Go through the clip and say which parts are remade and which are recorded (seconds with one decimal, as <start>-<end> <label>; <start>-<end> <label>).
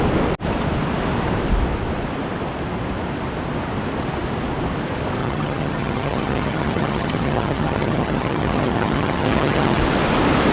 0.0-5.2 recorded; 5.2-9.8 remade; 9.8-10.5 recorded